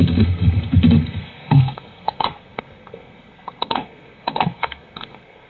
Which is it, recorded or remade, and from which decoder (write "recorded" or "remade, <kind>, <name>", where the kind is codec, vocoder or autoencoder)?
remade, codec, SNAC